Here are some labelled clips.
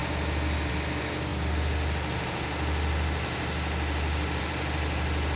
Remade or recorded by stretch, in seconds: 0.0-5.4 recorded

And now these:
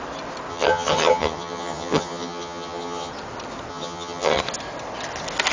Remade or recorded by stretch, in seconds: 0.0-0.5 recorded; 0.5-3.1 remade; 3.1-3.7 recorded; 3.7-4.4 remade; 4.4-5.5 recorded

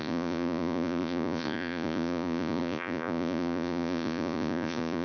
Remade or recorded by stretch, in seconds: 0.0-5.0 remade

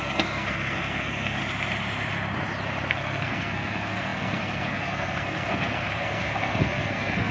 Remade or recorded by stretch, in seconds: 0.0-1.4 remade; 1.4-2.9 recorded; 2.9-7.3 remade

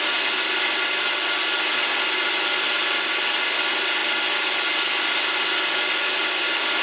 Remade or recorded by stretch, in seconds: 0.0-6.8 recorded

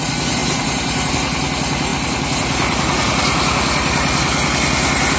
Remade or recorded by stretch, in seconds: 0.0-0.4 recorded; 0.4-1.1 remade; 1.1-5.2 recorded

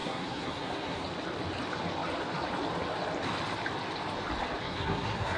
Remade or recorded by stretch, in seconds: 0.0-1.0 remade; 1.0-4.6 recorded; 4.6-5.4 remade